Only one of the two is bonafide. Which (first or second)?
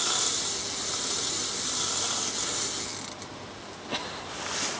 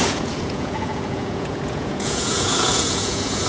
first